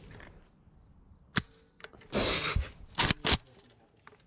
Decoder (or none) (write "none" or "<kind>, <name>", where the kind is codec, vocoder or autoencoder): none